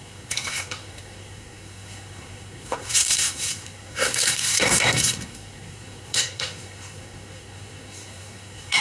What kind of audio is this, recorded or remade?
remade